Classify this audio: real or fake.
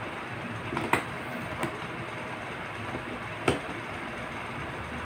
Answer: real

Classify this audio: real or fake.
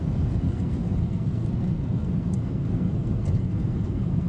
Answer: fake